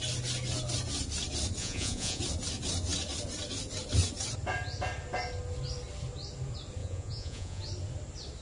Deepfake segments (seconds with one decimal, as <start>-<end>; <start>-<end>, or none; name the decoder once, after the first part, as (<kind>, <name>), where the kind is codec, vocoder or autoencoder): 1.6-2.2 (vocoder, Vocos); 6.8-7.6